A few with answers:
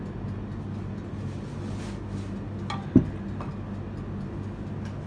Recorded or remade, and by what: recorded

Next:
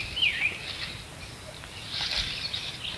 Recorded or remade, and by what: recorded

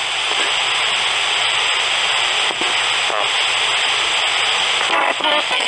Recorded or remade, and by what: recorded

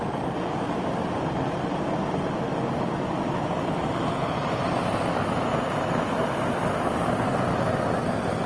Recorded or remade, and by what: recorded